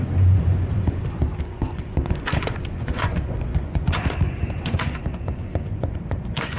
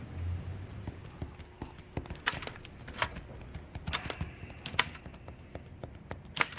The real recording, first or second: second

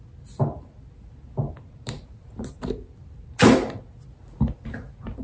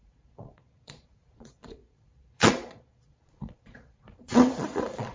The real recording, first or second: first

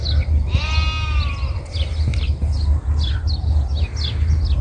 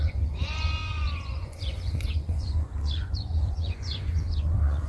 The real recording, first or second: first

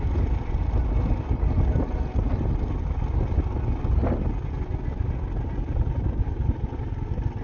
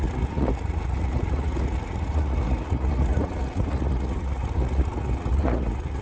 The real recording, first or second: first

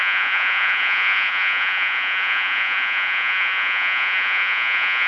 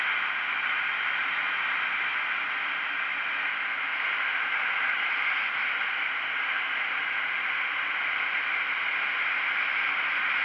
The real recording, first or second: second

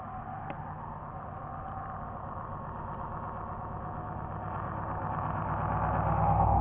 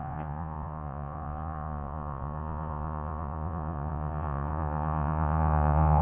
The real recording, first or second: first